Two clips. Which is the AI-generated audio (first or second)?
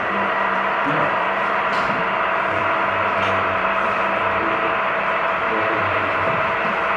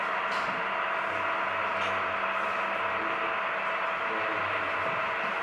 first